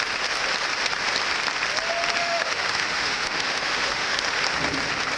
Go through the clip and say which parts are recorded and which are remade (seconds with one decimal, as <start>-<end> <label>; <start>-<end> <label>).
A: 0.0-2.2 recorded; 2.2-4.2 remade; 4.2-5.2 recorded